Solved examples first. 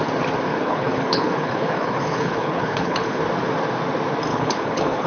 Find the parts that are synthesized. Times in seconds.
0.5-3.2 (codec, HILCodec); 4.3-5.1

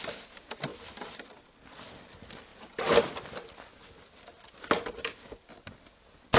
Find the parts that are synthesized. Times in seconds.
none

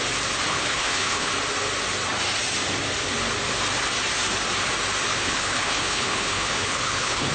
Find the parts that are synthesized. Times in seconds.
0.5-1.3 (codec, HILCodec); 5.1-7.3

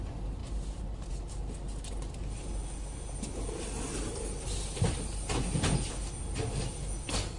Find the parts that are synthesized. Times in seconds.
none